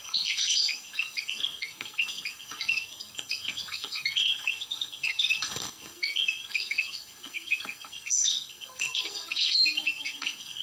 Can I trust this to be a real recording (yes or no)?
no